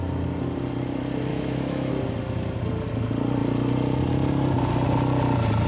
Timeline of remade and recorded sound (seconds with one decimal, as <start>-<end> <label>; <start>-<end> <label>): 0.0-1.3 recorded; 1.3-1.9 remade; 1.9-5.7 recorded